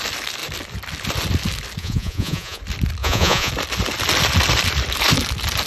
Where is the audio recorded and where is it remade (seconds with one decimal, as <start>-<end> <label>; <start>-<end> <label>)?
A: 0.0-1.8 recorded; 1.8-2.6 remade; 2.6-3.0 recorded; 3.0-3.5 remade; 3.5-5.7 recorded